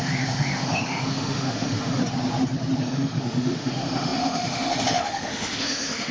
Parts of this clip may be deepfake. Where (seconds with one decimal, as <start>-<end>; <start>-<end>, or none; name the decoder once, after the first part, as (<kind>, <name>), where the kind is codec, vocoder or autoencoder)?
0.0-2.0 (autoencoder, DAC-VAE); 2.8-6.1